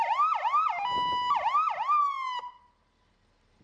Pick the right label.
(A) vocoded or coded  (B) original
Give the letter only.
B